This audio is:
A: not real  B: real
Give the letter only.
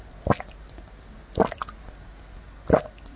B